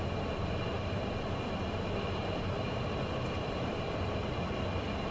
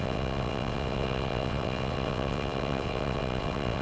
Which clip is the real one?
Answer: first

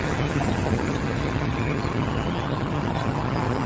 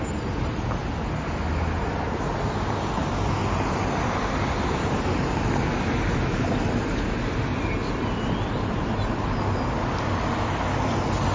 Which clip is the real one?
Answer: second